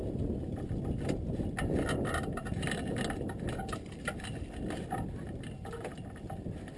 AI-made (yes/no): no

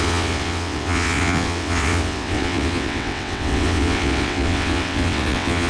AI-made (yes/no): yes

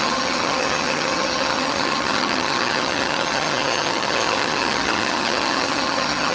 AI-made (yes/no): yes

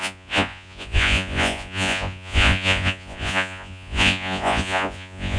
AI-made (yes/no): yes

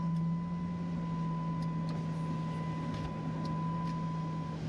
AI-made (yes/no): no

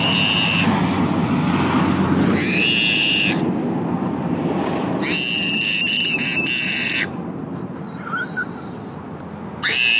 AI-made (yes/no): no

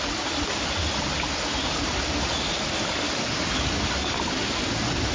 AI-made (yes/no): no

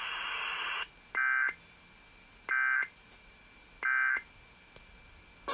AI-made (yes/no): no